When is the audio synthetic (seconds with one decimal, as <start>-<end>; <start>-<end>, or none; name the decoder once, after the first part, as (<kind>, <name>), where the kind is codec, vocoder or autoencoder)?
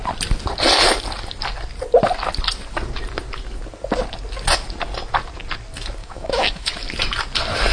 6.0-6.7 (autoencoder, DAC-VAE)